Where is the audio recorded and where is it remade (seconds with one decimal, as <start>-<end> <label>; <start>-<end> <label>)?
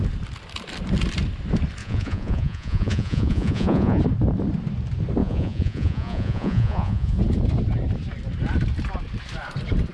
0.0-1.8 recorded; 1.8-4.0 remade; 4.0-5.2 recorded; 5.2-7.2 remade; 7.2-9.9 recorded